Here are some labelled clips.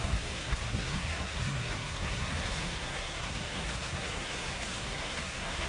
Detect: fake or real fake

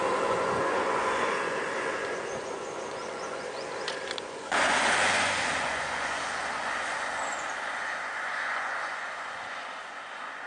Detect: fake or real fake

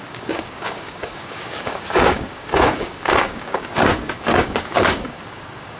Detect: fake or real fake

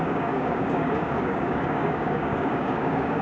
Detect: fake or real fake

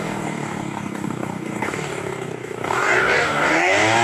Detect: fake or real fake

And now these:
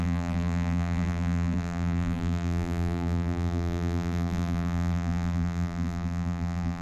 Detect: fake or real fake